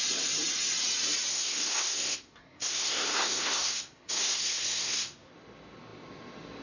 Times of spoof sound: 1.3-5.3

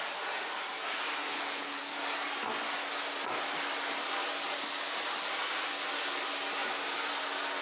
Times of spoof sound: 1.3-1.8

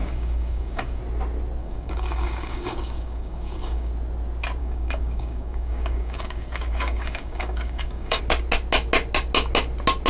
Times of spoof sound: 0.0-1.0; 1.6-3.9; 4.6-8.2

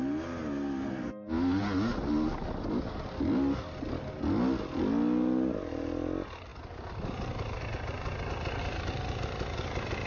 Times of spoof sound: none